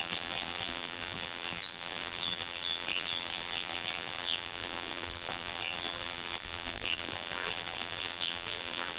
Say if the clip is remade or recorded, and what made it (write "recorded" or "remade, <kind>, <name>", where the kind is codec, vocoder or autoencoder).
remade, vocoder, BigVGAN v2